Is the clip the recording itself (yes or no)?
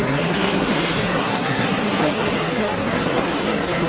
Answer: no